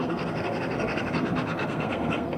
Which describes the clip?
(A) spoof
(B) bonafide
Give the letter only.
A